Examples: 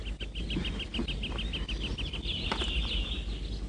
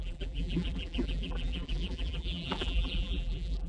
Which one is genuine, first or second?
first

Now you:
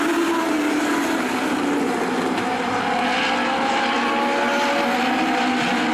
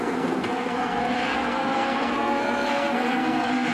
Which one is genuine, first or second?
first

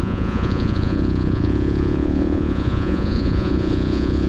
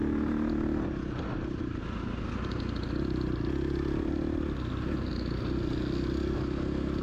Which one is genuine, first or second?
second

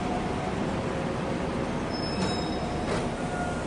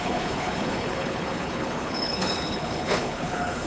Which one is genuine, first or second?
first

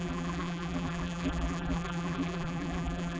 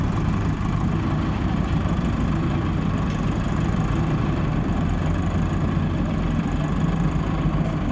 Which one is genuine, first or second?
second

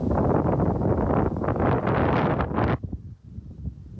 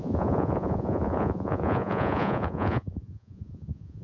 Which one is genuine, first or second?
first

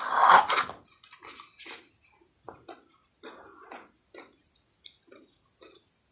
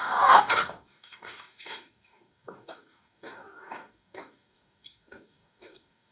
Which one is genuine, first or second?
first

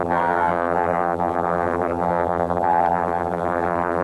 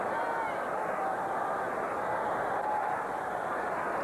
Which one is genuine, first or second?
second